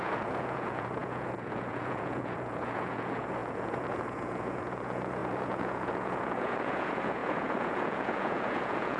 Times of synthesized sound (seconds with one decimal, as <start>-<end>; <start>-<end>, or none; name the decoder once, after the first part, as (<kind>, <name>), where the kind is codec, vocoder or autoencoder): 0.0-9.0 (vocoder, Vocos)